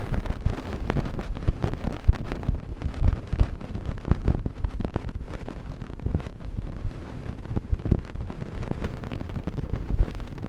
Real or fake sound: fake